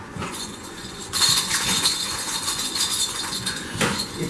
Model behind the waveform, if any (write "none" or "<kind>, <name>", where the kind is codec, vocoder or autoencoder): vocoder, Vocos